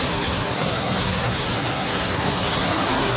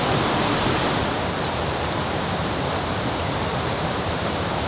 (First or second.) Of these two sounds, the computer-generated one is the first